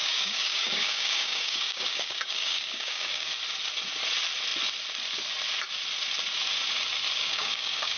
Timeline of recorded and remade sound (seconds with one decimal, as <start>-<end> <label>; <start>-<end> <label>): 0.0-3.3 remade; 3.3-7.2 recorded; 7.2-8.0 remade